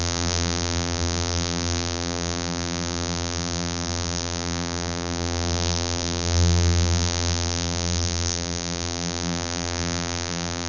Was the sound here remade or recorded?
remade